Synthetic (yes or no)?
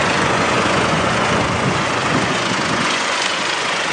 yes